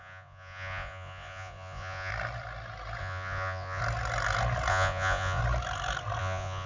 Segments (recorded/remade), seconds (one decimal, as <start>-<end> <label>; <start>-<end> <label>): 0.0-2.1 remade; 2.1-3.0 recorded; 3.0-3.8 remade; 3.8-4.7 recorded; 4.7-5.4 remade; 5.4-6.2 recorded; 6.2-6.7 remade